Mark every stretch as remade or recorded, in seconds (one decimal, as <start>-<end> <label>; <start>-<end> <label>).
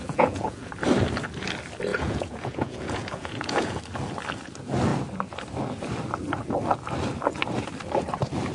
0.0-0.7 remade; 0.7-1.9 recorded; 1.9-3.8 remade; 3.8-8.5 recorded